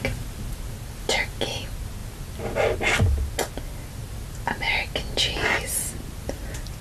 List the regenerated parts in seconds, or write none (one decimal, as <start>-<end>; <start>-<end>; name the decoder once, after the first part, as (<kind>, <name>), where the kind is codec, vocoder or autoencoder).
none